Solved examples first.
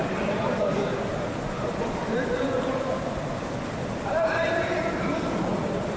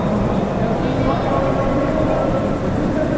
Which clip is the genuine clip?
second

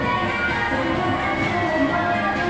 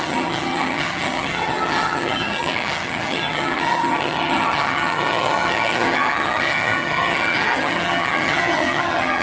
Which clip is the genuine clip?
first